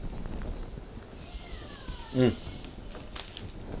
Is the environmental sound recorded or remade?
recorded